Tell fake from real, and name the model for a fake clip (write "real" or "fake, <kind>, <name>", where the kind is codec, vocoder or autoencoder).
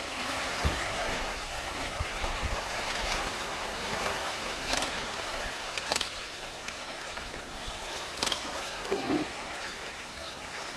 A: fake, codec, SNAC